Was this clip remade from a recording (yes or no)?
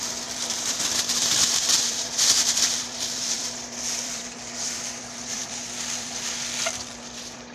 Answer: yes